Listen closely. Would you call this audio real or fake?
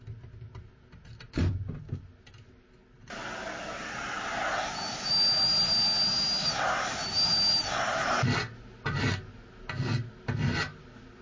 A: real